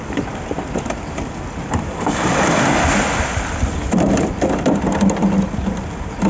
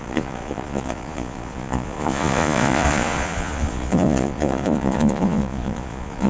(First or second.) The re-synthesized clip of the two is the second